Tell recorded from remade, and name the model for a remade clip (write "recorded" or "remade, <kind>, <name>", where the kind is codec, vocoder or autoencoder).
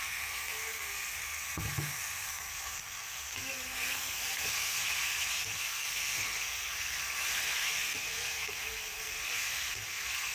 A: remade, codec, SNAC